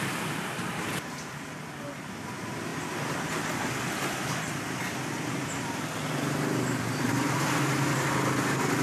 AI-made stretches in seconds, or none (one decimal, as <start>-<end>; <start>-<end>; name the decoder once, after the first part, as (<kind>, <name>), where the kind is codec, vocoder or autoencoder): none